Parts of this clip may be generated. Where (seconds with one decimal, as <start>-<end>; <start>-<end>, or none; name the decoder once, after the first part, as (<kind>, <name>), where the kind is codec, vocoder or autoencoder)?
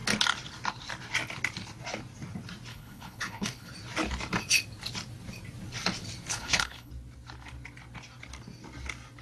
2.7-3.7 (codec, HILCodec); 6.3-6.9